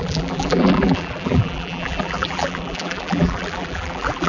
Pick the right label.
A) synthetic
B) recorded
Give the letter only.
A